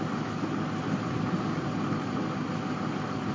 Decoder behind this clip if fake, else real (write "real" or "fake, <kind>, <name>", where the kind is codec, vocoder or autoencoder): real